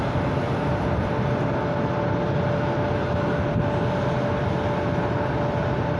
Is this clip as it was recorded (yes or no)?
yes